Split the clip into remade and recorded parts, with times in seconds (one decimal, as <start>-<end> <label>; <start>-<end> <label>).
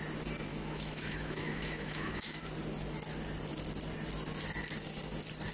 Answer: 0.0-0.5 recorded; 0.5-2.4 remade; 2.4-5.5 recorded